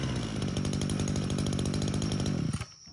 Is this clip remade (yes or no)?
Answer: no